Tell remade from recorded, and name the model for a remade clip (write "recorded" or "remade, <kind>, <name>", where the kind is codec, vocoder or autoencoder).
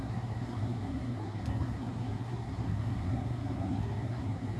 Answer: remade, codec, SNAC